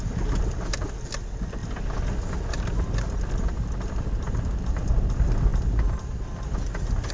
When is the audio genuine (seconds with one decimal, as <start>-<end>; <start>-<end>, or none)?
0.0-7.1